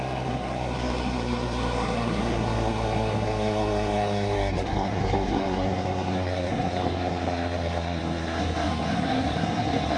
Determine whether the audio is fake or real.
fake